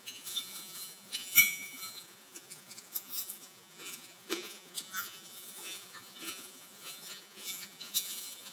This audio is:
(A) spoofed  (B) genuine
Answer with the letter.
A